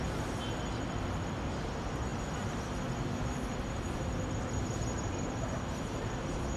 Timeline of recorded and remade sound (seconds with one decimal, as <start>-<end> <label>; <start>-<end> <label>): 0.0-6.6 recorded